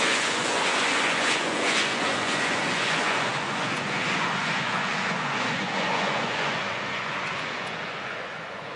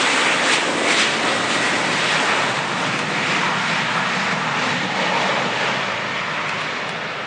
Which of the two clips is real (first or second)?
second